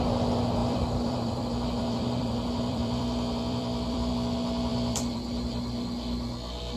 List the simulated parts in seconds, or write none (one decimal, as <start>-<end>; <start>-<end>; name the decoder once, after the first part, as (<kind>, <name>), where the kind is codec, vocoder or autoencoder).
0.6-4.1 (vocoder, BigVGAN v2); 4.7-5.6